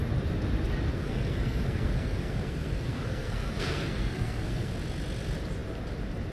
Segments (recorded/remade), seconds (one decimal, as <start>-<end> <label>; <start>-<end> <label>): 0.0-0.9 recorded; 0.9-4.7 remade; 4.7-6.3 recorded